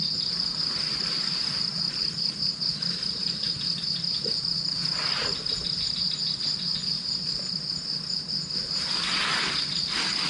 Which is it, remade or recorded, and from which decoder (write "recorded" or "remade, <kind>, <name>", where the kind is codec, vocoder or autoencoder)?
recorded